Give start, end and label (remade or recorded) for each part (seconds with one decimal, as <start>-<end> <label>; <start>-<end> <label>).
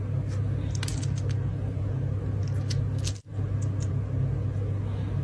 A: 0.0-5.2 recorded